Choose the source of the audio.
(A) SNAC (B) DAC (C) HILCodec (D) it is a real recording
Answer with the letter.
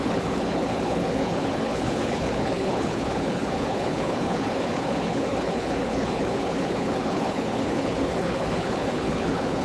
C